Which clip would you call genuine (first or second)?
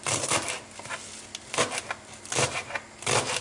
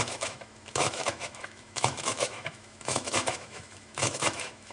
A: first